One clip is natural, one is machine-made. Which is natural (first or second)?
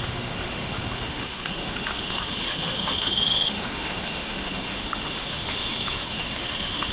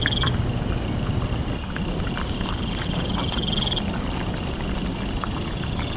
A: second